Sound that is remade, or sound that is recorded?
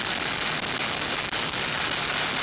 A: recorded